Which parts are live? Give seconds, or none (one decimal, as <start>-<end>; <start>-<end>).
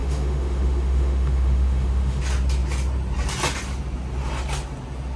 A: 2.2-5.2